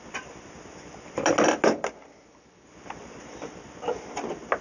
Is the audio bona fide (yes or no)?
yes